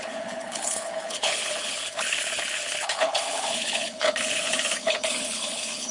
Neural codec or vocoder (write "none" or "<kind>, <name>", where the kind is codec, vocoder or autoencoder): codec, HILCodec